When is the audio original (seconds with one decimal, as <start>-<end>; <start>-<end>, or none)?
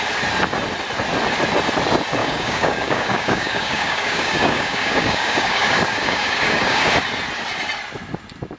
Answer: 0.0-2.2; 6.9-8.6